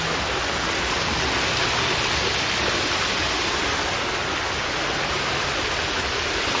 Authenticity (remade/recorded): recorded